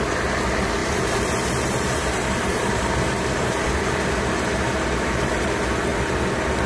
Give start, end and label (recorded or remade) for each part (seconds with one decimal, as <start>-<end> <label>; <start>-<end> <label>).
0.0-0.8 recorded; 0.8-3.8 remade; 3.8-6.7 recorded